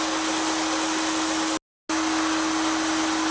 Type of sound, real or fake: real